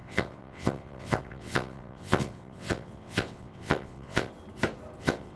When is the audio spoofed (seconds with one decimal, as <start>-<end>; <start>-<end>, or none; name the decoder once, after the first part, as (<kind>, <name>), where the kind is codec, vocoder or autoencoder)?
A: 0.0-4.3 (vocoder, WaveNeXt); 5.0-5.4